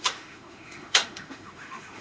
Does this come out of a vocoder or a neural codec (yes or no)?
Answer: yes